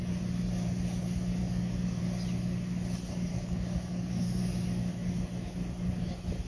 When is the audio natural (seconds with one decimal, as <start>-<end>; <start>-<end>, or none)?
0.0-1.4; 2.0-3.3; 4.4-6.5